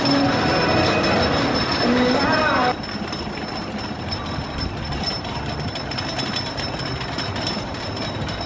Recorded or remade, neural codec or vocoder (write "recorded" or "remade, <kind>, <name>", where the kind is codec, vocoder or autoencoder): recorded